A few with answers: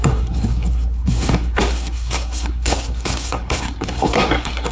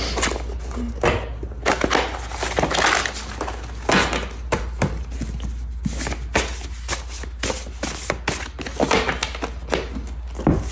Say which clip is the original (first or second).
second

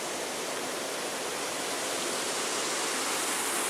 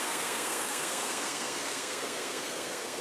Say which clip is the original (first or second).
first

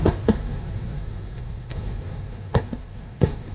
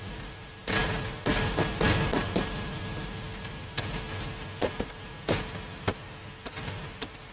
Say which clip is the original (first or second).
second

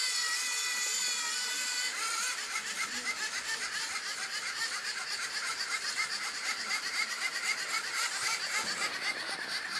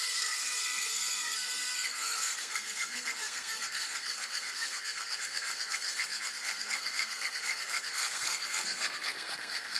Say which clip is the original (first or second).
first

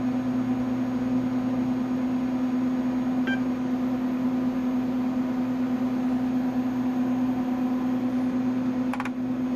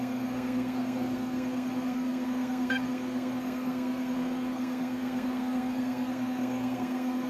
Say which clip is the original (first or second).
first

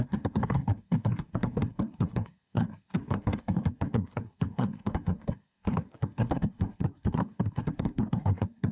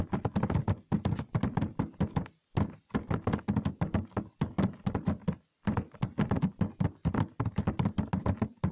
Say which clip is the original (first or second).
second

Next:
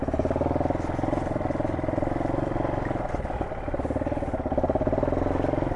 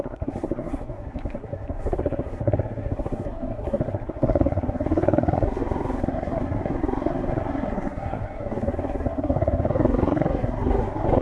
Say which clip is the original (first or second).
first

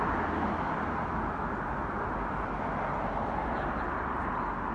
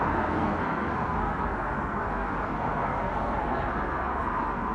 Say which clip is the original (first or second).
first